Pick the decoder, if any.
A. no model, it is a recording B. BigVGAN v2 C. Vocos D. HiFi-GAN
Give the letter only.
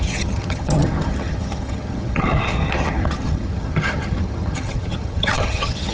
D